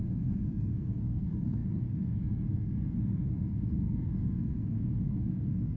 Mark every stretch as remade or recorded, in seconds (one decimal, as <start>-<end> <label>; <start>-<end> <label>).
0.0-5.8 remade